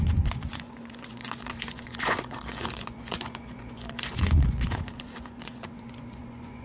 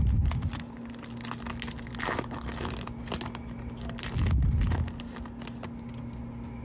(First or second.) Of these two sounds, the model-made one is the first